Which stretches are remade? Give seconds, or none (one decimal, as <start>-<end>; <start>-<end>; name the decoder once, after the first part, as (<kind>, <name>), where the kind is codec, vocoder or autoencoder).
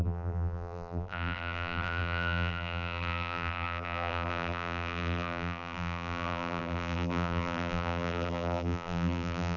0.0-9.6 (vocoder, BigVGAN v2)